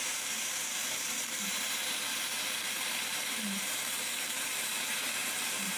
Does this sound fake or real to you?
fake